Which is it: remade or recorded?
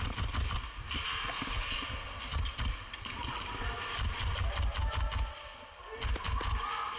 recorded